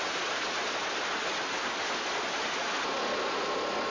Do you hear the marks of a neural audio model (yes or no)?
no